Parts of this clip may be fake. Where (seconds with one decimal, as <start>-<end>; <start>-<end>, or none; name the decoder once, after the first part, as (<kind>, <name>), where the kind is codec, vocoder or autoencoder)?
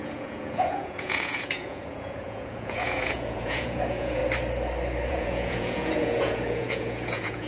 0.0-4.2 (vocoder, Vocos); 5.1-7.5